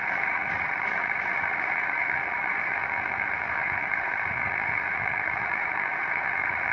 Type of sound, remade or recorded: remade